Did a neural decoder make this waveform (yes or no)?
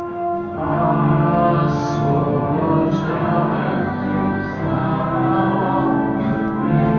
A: yes